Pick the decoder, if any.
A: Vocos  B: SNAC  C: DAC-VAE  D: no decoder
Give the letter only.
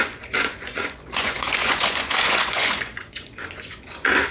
A